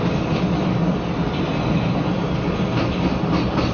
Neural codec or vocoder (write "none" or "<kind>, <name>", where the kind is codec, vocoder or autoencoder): none